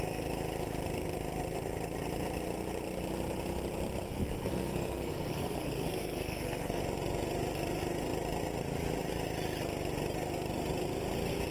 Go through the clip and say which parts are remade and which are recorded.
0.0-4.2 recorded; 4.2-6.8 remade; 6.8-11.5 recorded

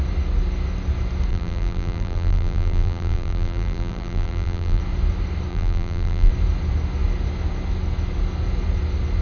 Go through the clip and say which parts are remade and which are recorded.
0.0-1.3 recorded; 1.3-4.8 remade; 4.8-5.5 recorded; 5.5-6.3 remade; 6.3-9.2 recorded